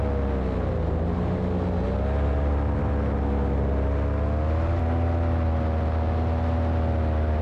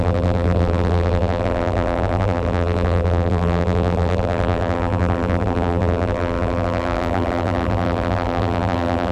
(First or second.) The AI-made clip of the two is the second